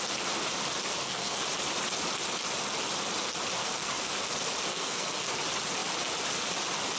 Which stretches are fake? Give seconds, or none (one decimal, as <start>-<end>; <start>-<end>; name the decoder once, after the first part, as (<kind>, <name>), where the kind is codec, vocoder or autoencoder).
0.9-1.4 (codec, SNAC); 3.6-4.1; 4.7-5.3